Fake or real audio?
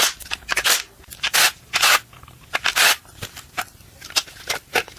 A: fake